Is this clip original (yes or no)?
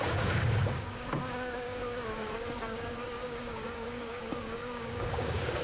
no